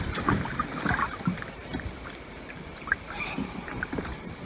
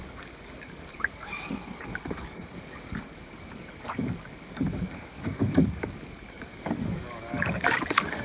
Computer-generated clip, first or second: second